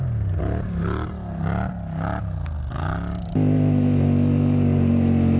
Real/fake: real